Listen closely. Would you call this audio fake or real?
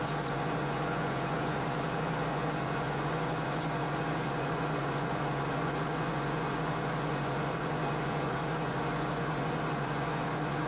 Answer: fake